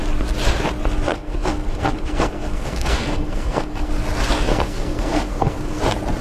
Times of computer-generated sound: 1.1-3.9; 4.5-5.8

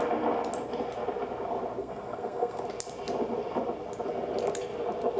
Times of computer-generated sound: 1.8-2.6

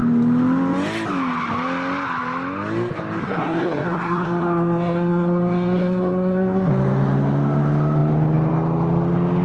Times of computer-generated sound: 3.2-6.7

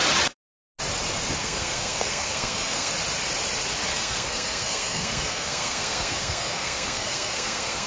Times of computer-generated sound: 1.4-2.9; 3.9-7.9

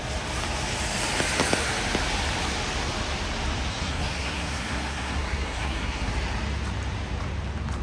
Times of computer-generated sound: 3.7-6.1